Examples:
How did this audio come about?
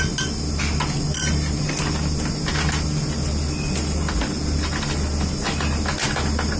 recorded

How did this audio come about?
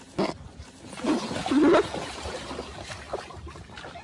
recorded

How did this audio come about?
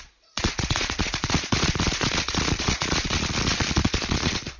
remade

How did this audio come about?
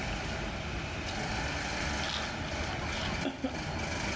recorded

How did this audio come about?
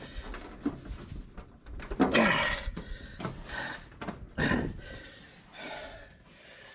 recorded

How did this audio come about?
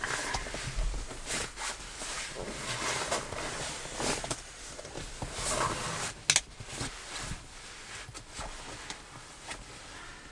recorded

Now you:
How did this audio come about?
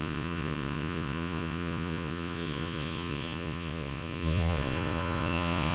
remade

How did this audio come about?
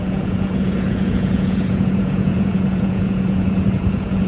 remade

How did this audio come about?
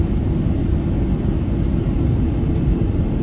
recorded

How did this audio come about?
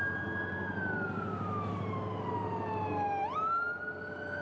recorded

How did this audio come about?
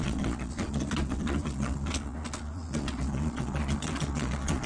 remade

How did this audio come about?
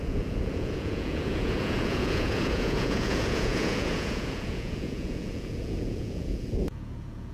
remade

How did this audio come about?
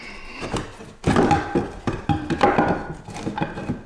recorded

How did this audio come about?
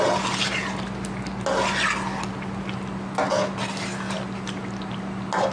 recorded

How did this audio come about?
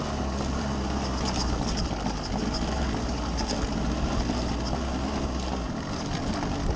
recorded